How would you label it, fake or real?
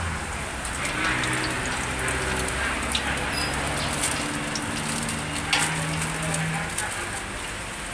real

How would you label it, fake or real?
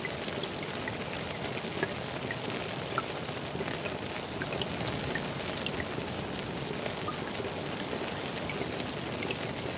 real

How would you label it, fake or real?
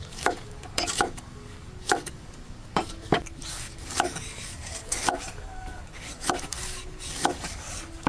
fake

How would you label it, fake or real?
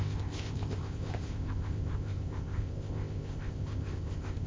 fake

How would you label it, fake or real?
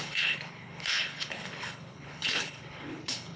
fake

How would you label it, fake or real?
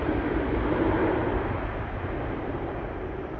fake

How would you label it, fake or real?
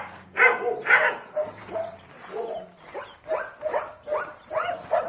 real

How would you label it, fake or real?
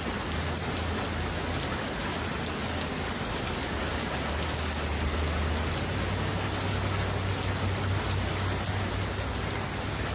real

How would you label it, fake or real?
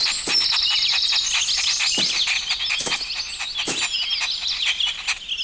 real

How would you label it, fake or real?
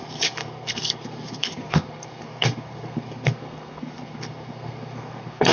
fake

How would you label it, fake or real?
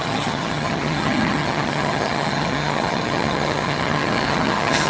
fake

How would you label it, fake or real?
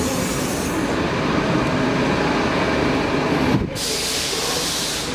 real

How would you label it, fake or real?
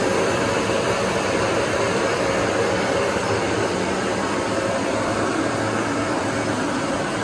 fake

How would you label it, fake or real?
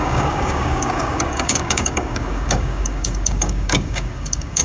fake